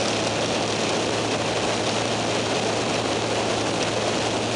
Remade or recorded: recorded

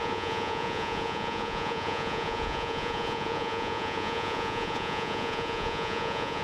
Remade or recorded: remade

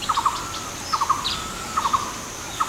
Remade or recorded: recorded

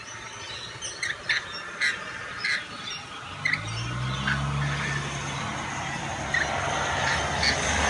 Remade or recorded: recorded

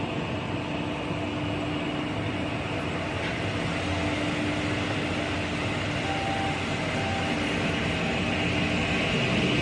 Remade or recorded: recorded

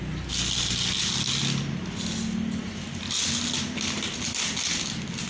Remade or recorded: recorded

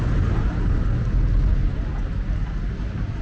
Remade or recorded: recorded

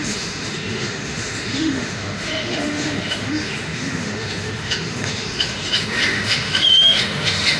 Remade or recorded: remade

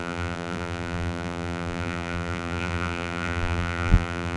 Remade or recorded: remade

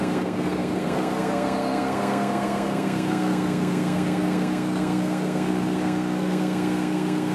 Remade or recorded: remade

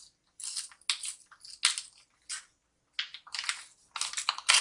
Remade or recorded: recorded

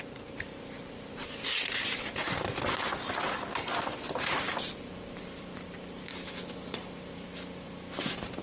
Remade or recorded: recorded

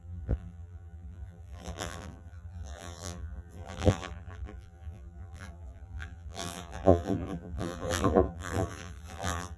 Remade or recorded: remade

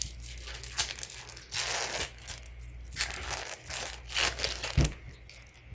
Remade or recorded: recorded